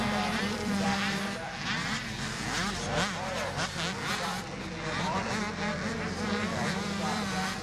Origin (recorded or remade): remade